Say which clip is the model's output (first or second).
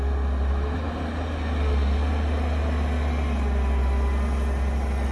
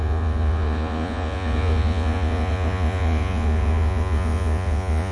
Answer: second